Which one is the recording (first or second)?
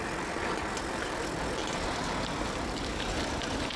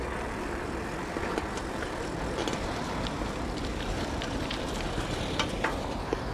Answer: first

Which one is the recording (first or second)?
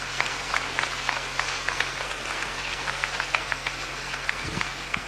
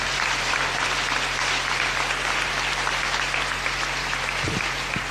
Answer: second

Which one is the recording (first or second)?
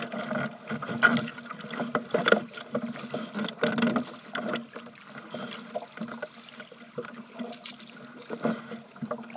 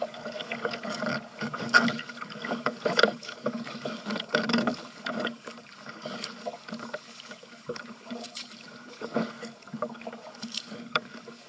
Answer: first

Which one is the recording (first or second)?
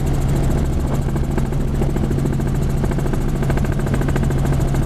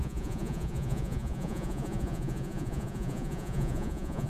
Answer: first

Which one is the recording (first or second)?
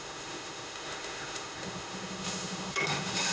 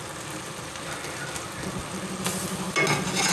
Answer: second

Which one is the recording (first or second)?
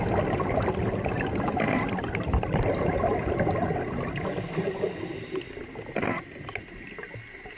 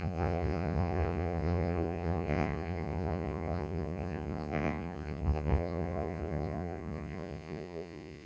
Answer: first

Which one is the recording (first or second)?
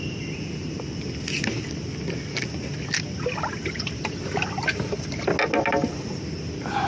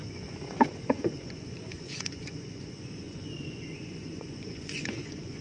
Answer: first